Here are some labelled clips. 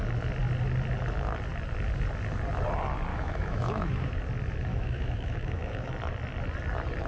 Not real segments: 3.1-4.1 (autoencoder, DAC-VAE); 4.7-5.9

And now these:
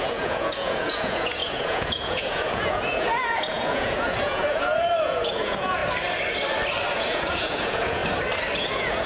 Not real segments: 0.0-5.8 (vocoder, Vocos); 6.9-8.0; 8.6-9.1

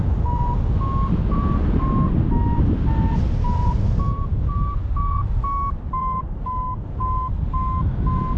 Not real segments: none